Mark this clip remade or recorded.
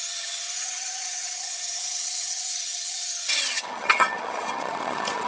remade